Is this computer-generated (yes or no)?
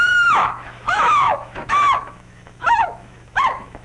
yes